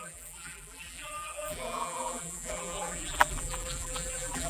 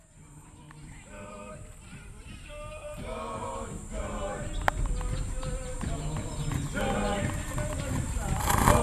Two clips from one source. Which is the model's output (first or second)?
first